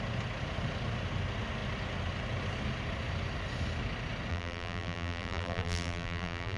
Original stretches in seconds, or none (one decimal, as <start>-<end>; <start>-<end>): 0.0-4.3